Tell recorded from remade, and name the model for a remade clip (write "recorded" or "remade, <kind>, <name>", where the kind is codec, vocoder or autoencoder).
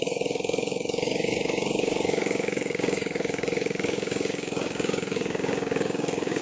remade, codec, DAC